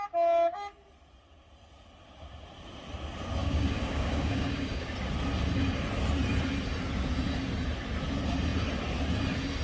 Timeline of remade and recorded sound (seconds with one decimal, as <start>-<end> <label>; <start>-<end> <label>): 0.0-3.4 recorded; 3.4-4.9 remade; 4.9-9.6 recorded